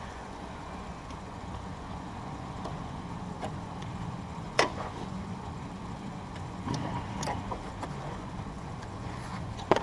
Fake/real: fake